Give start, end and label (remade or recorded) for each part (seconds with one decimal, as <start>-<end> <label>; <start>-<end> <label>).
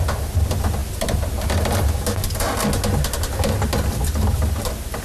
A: 0.0-5.0 recorded